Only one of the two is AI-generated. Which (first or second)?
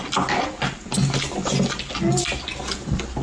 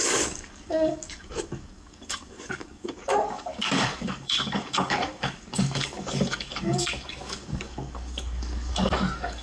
second